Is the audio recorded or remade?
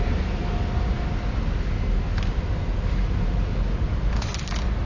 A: recorded